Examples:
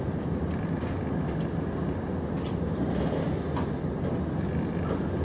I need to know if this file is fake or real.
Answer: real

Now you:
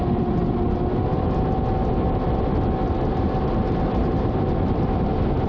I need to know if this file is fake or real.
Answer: real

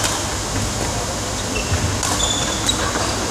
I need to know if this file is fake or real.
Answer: real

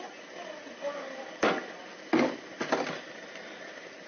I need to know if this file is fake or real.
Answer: real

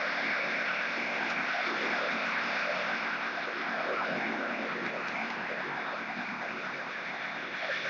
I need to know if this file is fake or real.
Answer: fake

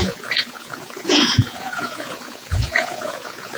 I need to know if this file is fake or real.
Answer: fake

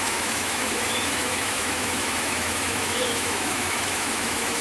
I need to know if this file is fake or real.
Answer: fake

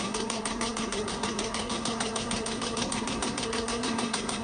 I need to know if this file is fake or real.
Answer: fake